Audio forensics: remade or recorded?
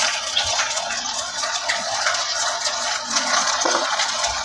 remade